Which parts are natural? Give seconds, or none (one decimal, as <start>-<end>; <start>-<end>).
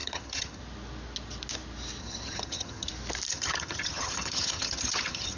0.6-2.0; 2.9-3.3